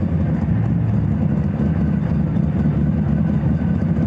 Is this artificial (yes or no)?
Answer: no